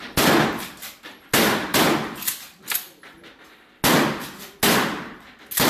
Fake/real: real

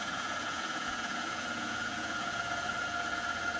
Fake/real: fake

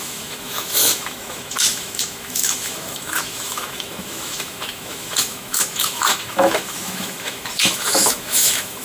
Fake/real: fake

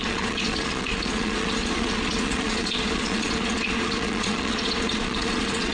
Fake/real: fake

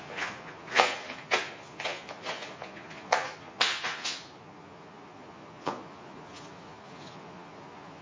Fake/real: fake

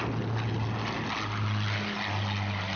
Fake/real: real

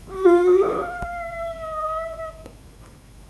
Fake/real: fake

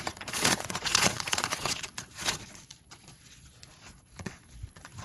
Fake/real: fake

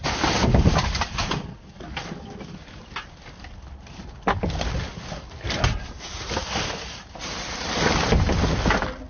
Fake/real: real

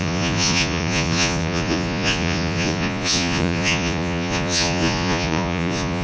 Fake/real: fake